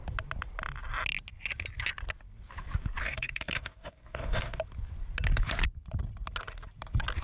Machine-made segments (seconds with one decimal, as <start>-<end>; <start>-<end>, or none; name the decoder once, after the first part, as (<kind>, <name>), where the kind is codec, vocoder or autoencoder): 3.0-4.6 (codec, DAC)